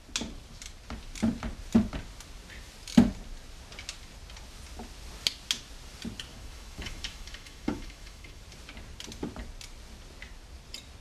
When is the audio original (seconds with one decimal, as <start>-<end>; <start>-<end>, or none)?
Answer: 0.0-6.3; 8.4-11.0